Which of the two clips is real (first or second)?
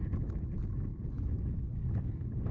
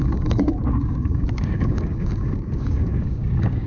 first